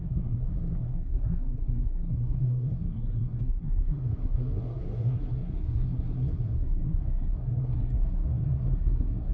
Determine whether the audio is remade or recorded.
remade